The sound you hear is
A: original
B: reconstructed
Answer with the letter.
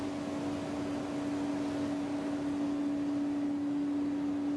A